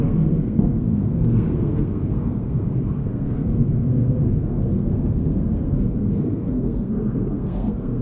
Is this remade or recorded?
remade